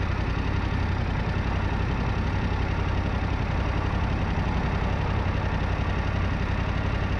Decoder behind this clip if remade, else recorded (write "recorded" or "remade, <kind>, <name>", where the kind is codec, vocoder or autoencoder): recorded